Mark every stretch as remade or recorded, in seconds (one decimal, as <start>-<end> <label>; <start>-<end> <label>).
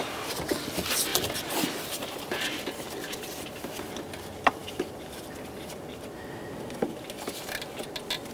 0.0-8.3 recorded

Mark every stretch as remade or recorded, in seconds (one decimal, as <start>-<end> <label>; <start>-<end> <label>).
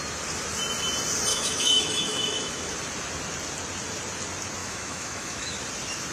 0.0-1.3 recorded; 1.3-2.7 remade; 2.7-4.6 recorded; 4.6-5.6 remade; 5.6-6.1 recorded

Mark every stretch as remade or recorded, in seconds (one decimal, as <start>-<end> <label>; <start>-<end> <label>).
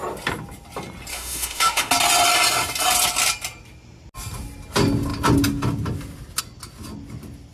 0.0-1.1 recorded; 1.1-1.9 remade; 1.9-7.5 recorded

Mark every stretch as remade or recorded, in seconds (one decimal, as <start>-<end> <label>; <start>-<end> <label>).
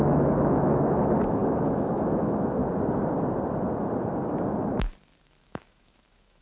0.0-2.6 remade; 2.6-5.2 recorded; 5.2-6.4 remade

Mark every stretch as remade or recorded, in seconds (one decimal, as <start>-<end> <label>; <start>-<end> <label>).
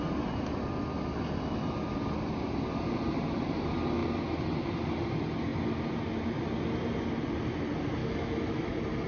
0.0-8.0 recorded; 8.0-8.7 remade; 8.7-9.1 recorded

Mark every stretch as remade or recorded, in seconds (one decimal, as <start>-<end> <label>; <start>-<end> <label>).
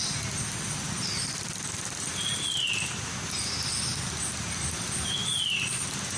0.0-6.2 recorded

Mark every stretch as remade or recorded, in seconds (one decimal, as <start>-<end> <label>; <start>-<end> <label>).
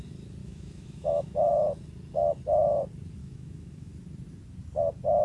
0.0-0.4 recorded; 0.4-1.5 remade; 1.5-3.2 recorded; 3.2-3.9 remade; 3.9-5.2 recorded